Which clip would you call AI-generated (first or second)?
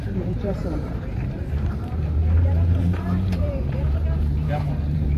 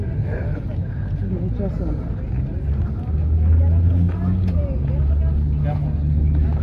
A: first